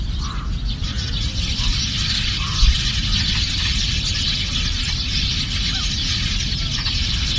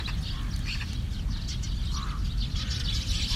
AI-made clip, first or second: first